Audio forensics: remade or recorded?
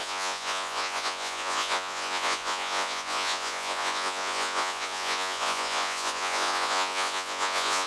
remade